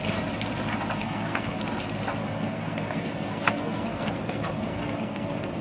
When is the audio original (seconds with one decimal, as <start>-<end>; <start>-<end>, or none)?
0.0-1.0; 1.6-2.2